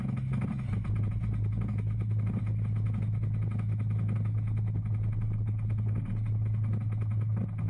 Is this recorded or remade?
recorded